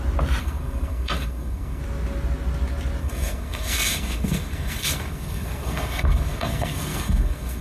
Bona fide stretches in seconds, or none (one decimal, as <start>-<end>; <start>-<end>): 0.0-0.4; 1.8-3.0